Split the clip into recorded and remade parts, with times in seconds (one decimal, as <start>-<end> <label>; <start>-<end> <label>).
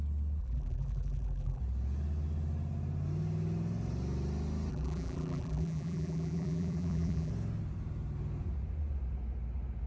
0.0-0.4 recorded; 0.4-1.6 remade; 1.6-4.7 recorded; 4.7-7.3 remade; 7.3-9.9 recorded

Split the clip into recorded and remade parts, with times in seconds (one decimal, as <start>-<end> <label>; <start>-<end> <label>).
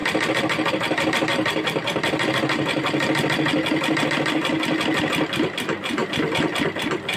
0.0-7.2 recorded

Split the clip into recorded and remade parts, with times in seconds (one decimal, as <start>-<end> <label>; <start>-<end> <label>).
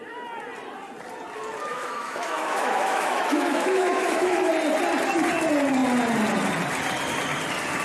0.0-1.7 recorded; 1.7-4.5 remade; 4.5-7.8 recorded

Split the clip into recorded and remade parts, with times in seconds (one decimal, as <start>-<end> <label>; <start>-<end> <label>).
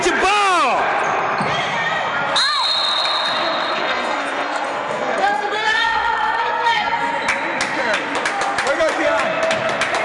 0.0-3.8 recorded; 3.8-7.1 remade; 7.1-10.0 recorded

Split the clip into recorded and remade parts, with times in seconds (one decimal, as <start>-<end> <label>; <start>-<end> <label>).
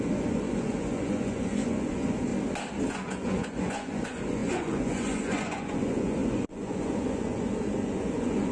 0.0-2.3 remade; 2.3-2.9 recorded; 2.9-8.5 remade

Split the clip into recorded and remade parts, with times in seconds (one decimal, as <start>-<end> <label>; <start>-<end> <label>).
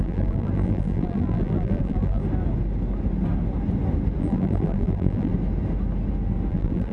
0.0-2.2 remade; 2.2-4.2 recorded; 4.2-5.3 remade; 5.3-6.5 recorded; 6.5-6.9 remade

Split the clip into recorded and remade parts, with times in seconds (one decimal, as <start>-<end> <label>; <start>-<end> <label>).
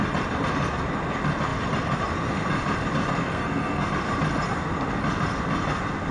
0.0-3.2 recorded; 3.2-3.9 remade; 3.9-6.1 recorded